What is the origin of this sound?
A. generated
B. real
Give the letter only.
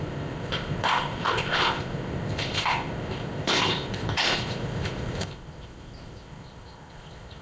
A